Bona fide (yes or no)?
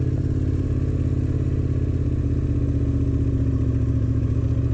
yes